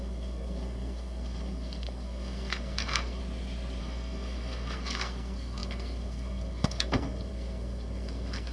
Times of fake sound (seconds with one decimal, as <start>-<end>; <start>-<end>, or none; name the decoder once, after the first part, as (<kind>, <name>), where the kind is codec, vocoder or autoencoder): 0.0-3.2 (codec, SNAC); 3.8-8.5